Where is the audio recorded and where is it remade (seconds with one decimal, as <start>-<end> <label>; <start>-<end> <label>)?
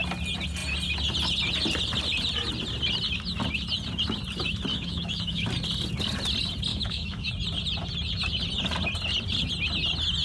0.0-4.7 recorded; 4.7-5.5 remade; 5.5-6.7 recorded; 6.7-7.3 remade; 7.3-10.2 recorded